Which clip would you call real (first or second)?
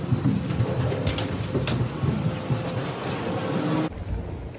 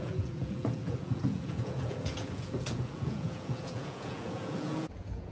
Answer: first